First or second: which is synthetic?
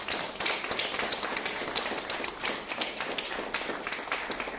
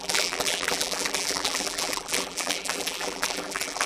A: second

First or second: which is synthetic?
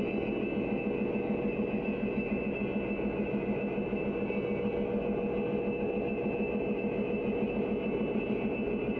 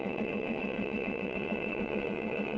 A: second